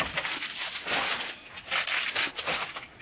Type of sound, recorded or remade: recorded